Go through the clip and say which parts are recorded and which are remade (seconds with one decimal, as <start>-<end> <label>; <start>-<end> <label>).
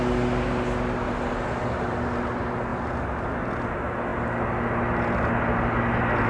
0.0-6.3 recorded